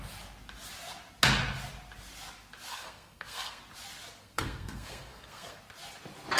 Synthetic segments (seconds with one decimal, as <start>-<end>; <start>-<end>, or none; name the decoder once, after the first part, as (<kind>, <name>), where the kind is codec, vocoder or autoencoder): 2.7-3.6 (codec, SNAC); 4.2-5.6